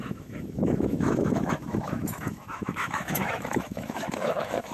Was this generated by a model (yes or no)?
yes